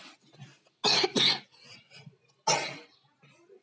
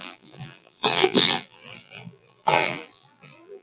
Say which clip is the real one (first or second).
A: first